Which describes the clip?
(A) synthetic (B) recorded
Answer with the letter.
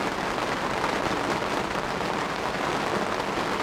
B